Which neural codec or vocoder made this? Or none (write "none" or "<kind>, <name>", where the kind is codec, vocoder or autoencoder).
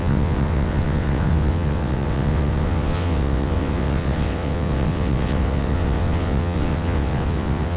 vocoder, WaveNeXt